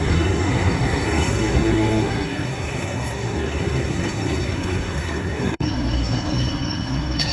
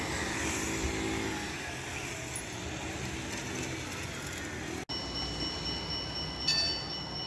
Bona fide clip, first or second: second